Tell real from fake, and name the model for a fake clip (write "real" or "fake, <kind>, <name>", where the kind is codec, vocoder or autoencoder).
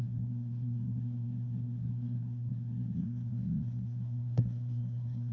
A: fake, codec, SNAC